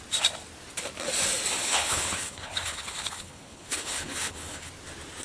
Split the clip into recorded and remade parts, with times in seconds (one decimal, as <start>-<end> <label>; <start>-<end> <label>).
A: 0.0-1.6 recorded; 1.6-4.7 remade; 4.7-5.2 recorded